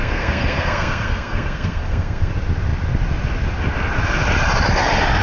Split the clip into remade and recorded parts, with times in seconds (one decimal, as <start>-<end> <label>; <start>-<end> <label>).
0.0-2.3 remade; 2.3-5.2 recorded